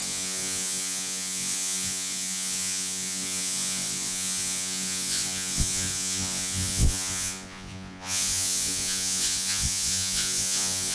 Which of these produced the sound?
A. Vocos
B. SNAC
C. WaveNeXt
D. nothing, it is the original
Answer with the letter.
A